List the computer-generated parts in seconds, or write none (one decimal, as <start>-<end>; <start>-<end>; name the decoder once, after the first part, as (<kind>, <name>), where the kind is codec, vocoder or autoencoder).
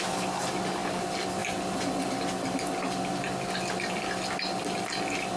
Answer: none